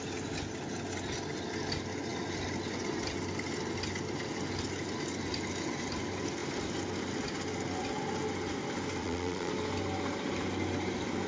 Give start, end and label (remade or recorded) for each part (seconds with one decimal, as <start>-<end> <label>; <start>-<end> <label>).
0.0-9.0 recorded; 9.0-9.5 remade; 9.5-11.3 recorded